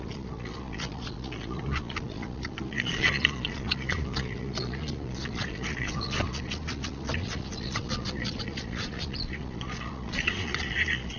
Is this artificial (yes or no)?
yes